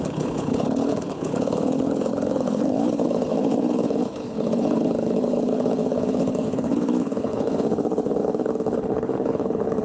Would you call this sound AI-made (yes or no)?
yes